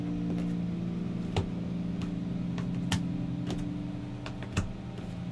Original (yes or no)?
yes